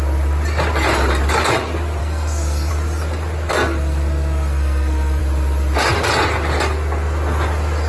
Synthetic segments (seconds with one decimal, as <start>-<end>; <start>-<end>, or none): 2.0-2.7; 3.5-5.2